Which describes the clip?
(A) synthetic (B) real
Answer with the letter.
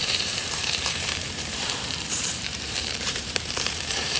A